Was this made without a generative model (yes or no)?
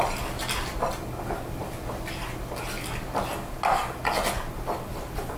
yes